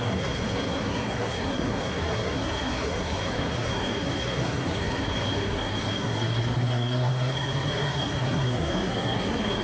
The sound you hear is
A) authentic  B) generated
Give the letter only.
B